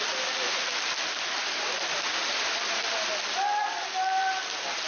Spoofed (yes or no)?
no